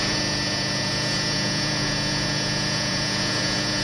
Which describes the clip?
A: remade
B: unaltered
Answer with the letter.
A